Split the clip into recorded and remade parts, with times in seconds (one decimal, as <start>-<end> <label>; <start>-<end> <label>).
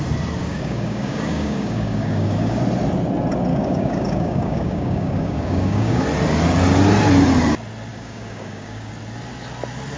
0.0-0.4 recorded; 0.4-2.6 remade; 2.6-3.5 recorded; 3.5-6.0 remade; 6.0-7.9 recorded; 7.9-8.9 remade; 8.9-10.0 recorded